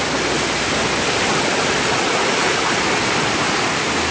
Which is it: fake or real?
fake